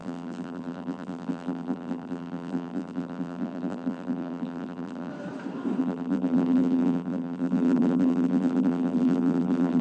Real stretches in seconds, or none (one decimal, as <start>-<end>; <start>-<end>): 5.1-5.8